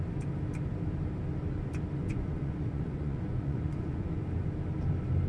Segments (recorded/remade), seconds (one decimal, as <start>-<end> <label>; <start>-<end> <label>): 0.0-2.0 recorded; 2.0-4.2 remade; 4.2-5.3 recorded